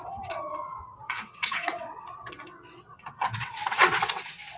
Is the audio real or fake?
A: fake